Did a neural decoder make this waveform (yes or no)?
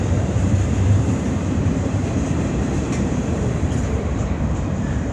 yes